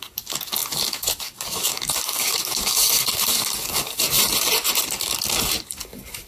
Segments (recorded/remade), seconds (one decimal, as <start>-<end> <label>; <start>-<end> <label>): 0.0-4.2 remade; 4.2-4.8 recorded; 4.8-6.3 remade